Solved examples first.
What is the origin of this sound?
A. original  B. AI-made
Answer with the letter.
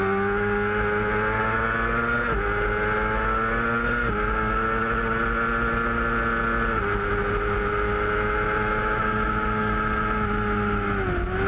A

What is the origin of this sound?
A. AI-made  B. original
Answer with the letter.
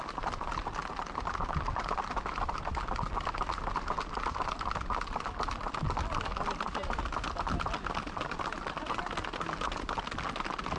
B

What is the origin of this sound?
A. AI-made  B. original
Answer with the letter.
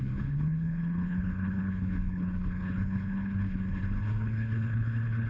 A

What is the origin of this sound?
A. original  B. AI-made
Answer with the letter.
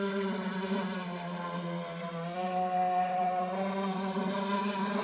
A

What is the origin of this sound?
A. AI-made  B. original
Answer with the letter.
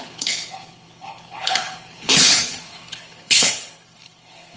A